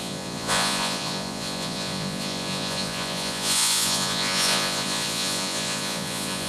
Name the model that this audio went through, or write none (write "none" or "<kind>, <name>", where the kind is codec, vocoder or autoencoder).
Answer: vocoder, Vocos